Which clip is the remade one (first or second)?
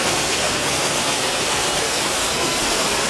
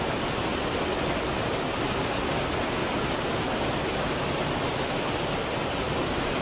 first